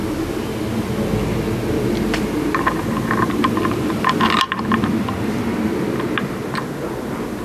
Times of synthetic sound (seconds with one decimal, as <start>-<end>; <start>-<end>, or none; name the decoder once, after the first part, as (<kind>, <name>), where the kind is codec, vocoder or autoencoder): none